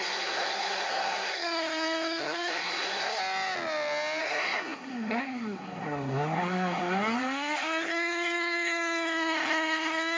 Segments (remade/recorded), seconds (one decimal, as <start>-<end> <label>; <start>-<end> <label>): 0.0-3.2 remade; 3.2-4.2 recorded; 4.2-10.2 remade